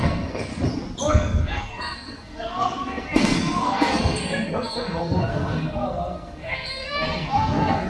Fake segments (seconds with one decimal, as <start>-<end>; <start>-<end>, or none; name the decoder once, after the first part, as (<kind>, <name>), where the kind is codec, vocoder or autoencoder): 0.0-0.5 (codec, SNAC); 1.1-7.9